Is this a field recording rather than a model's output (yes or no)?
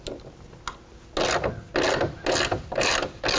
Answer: yes